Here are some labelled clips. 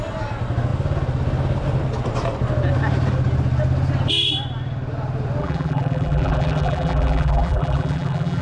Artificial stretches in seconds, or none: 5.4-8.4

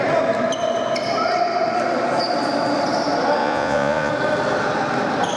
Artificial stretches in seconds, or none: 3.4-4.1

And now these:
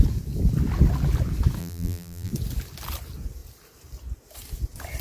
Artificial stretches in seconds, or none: 1.6-2.3